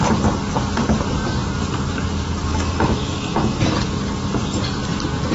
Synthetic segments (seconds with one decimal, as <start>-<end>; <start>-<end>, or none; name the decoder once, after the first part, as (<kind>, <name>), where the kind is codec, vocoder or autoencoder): 2.5-3.6 (autoencoder, DAC-VAE)